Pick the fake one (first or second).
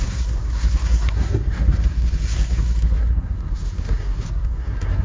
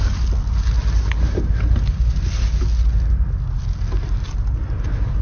first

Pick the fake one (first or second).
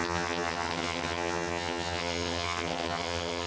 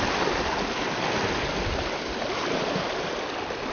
first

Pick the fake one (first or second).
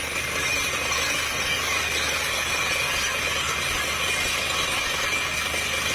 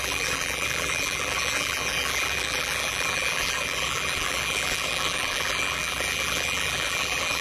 second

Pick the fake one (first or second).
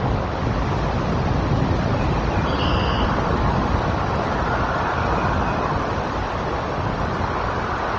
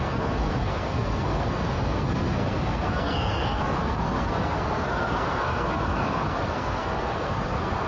second